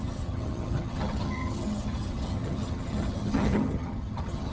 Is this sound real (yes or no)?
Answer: no